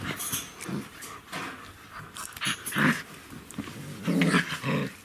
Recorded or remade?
recorded